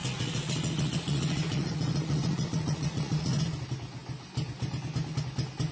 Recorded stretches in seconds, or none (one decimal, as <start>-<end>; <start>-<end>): 3.4-5.7